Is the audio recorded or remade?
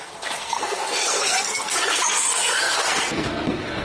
remade